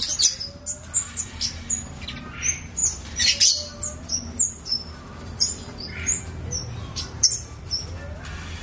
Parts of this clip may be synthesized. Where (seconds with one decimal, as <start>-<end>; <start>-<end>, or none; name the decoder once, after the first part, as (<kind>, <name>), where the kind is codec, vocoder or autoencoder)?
4.7-6.2 (vocoder, BigVGAN v2); 6.8-7.6